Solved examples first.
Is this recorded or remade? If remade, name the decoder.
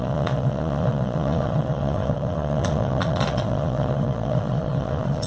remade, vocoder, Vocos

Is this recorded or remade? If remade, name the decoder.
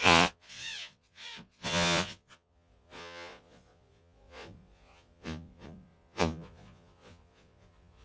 remade, vocoder, Vocos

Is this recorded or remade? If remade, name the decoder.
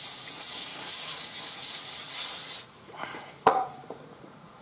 remade, vocoder, Vocos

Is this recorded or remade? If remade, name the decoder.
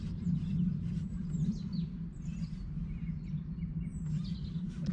recorded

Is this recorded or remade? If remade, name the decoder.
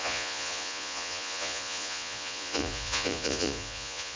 remade, vocoder, Vocos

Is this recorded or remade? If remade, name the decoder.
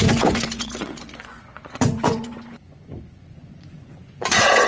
remade, vocoder, Vocos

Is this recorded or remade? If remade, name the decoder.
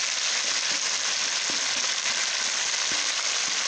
recorded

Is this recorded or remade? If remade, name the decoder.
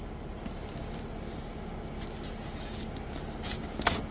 recorded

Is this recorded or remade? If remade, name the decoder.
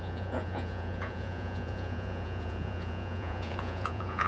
remade, vocoder, Vocos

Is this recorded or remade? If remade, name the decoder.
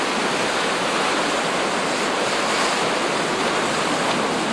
recorded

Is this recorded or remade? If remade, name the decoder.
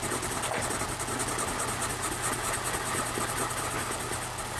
recorded